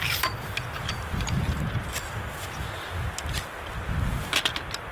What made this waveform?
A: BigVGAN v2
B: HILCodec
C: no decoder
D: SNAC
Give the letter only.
C